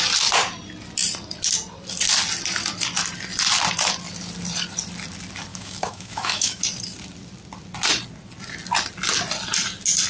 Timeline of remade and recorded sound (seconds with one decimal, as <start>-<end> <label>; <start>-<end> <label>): 0.0-5.5 recorded; 5.5-6.6 remade; 6.6-10.1 recorded